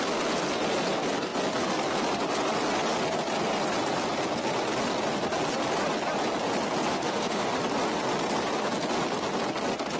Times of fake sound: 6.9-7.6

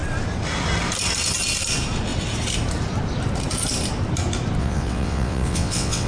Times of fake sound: 4.6-6.1

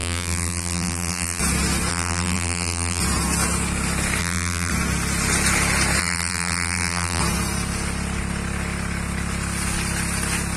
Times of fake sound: 0.0-1.4; 1.9-3.0; 4.2-4.7; 6.0-7.2

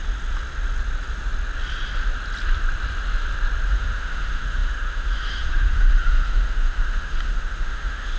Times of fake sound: 3.7-8.2

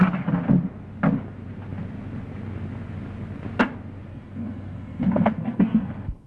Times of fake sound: 4.1-6.3

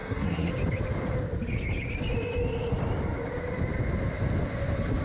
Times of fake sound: 0.0-0.5